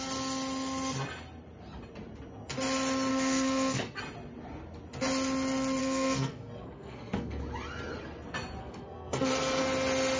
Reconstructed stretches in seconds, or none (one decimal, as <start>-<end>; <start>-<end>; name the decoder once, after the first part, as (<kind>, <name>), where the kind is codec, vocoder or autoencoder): 3.1-4.0 (codec, SNAC); 5.8-7.4; 8.6-9.3

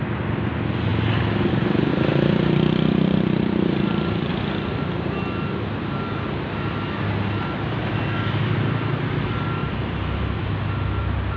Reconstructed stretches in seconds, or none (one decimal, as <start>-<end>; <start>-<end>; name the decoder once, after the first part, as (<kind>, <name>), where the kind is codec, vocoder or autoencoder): 1.9-4.3 (vocoder, BigVGAN v2); 9.6-10.4

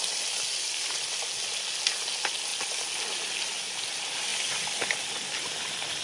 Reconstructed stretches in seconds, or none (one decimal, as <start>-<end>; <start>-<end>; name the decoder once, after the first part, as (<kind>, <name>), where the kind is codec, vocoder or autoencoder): none

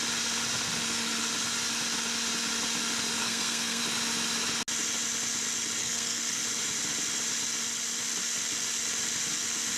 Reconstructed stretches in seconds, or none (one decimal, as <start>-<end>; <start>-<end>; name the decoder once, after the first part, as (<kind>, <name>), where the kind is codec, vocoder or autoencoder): 3.2-3.8 (codec, SNAC); 5.8-6.4

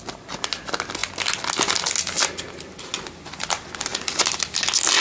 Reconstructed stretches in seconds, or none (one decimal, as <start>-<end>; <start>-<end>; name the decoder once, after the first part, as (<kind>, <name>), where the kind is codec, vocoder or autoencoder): none

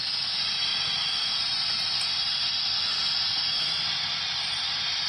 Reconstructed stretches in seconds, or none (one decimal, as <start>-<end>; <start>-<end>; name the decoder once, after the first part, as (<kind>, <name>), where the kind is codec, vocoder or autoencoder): none

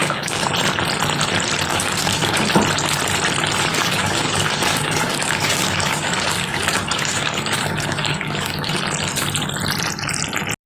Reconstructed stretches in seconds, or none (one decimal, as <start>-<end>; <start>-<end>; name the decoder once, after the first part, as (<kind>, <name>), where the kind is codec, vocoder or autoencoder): 0.0-0.5 (codec, DAC); 1.7-2.5; 3.7-8.8

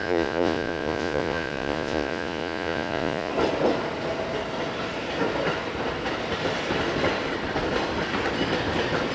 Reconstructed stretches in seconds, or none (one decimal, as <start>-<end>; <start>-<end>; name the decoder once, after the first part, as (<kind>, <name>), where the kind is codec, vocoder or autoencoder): 0.0-3.3 (vocoder, Vocos)